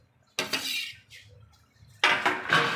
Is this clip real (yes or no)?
yes